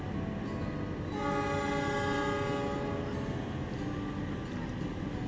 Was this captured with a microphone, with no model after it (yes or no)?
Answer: yes